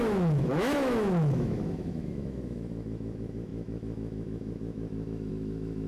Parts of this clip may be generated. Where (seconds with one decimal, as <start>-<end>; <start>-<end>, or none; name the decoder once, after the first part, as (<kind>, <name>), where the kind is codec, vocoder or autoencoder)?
0.0-5.9 (autoencoder, DAC-VAE)